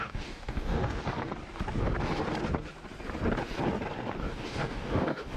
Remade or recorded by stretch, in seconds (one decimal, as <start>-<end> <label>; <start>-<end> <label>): 0.0-1.1 remade; 1.1-4.3 recorded; 4.3-5.4 remade